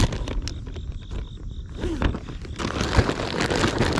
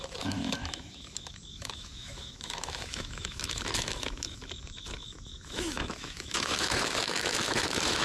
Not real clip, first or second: second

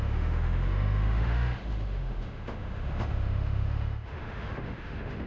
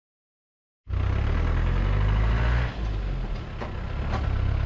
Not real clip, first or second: first